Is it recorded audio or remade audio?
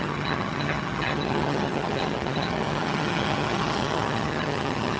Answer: remade